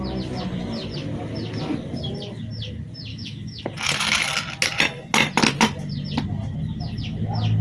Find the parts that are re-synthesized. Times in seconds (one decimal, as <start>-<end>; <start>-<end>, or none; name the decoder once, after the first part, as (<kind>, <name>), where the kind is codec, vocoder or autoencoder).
3.1-3.6 (autoencoder, DAC-VAE)